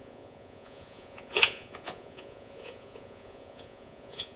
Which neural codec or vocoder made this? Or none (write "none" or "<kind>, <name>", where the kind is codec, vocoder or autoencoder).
vocoder, Vocos